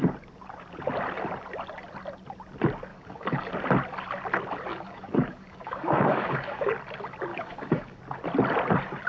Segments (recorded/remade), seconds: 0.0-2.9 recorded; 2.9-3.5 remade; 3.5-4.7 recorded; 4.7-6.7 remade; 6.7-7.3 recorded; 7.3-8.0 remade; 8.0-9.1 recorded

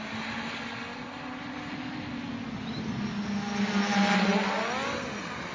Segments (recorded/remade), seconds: 0.0-5.5 recorded

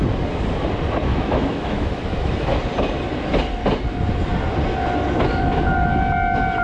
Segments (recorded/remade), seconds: 0.0-1.1 recorded; 1.1-2.6 remade; 2.6-6.6 recorded

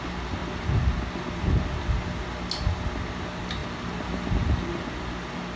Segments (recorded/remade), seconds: 0.0-5.6 recorded